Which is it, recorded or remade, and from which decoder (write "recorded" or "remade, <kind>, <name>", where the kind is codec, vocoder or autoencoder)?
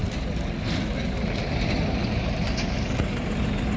recorded